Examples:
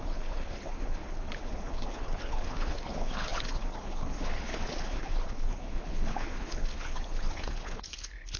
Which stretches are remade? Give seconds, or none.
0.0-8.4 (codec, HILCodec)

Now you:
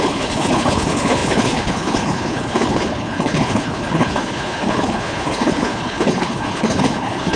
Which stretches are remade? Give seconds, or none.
0.0-7.4 (codec, HILCodec)

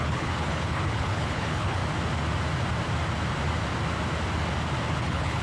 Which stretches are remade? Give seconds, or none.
0.0-1.8 (codec, HILCodec); 5.0-5.4

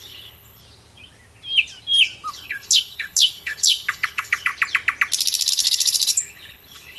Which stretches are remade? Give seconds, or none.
0.0-0.6 (codec, HILCodec); 2.3-4.5; 5.5-7.0

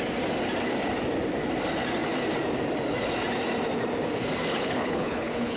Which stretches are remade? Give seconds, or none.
4.5-5.6 (codec, HILCodec)

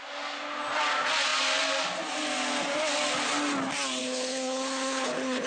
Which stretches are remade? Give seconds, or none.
4.0-5.5 (codec, HILCodec)

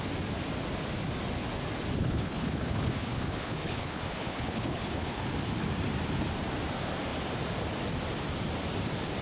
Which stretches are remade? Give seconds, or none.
2.0-5.2 (codec, HILCodec)